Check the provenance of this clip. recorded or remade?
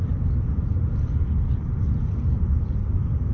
recorded